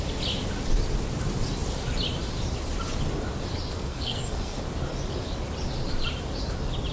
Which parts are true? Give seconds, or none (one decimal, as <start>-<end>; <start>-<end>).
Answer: 0.0-3.7; 4.6-6.9